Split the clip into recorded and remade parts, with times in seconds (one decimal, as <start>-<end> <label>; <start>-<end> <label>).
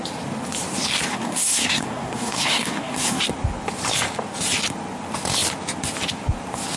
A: 0.0-1.1 recorded; 1.1-3.2 remade; 3.2-6.8 recorded